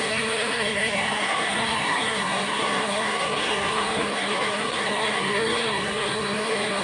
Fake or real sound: fake